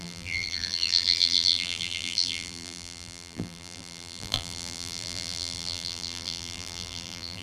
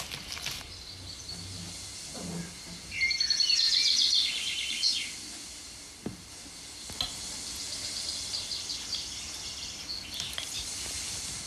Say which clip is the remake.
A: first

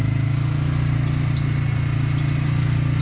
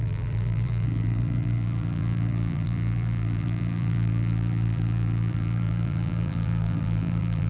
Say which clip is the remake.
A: second